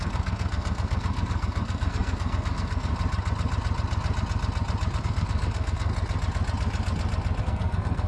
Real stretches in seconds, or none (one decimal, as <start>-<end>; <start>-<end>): 2.9-5.0; 5.9-7.4